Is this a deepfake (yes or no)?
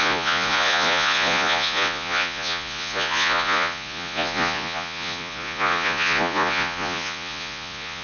yes